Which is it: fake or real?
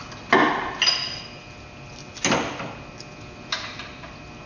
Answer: real